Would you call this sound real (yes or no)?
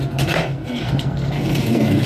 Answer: no